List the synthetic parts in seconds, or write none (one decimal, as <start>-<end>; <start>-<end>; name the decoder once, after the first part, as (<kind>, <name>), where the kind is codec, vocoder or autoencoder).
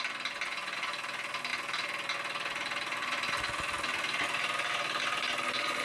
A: none